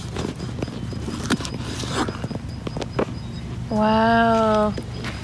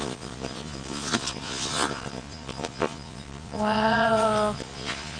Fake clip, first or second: second